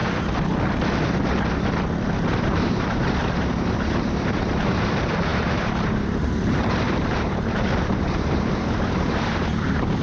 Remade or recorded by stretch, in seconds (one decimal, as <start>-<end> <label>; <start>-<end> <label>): 0.0-2.6 recorded; 2.6-3.2 remade; 3.2-3.7 recorded; 3.7-10.0 remade